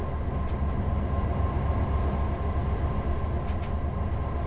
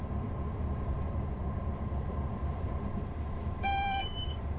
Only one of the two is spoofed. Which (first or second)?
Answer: second